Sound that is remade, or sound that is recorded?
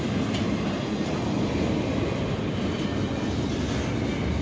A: recorded